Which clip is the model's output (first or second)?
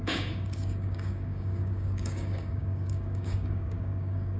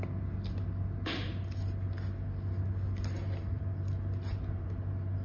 first